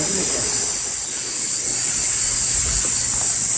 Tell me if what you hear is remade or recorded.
recorded